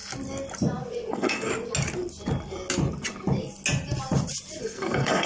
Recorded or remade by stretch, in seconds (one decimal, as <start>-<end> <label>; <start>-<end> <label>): 0.0-1.1 recorded; 1.1-1.5 remade; 1.5-4.6 recorded; 4.6-5.3 remade